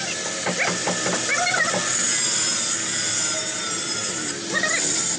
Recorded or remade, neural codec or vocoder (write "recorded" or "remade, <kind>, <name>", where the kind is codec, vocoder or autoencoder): recorded